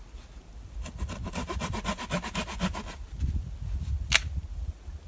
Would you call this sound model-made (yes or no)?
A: no